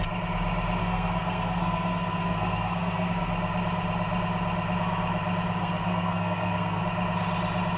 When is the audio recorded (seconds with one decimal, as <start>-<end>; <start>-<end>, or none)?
0.0-0.8; 3.3-5.6; 6.8-7.8